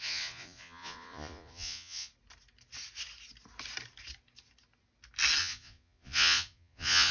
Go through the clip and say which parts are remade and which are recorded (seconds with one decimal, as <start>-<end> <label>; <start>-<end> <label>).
0.0-2.1 remade; 2.1-5.4 recorded; 5.4-7.1 remade